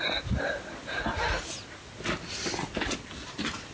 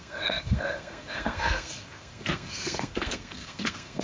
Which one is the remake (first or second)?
second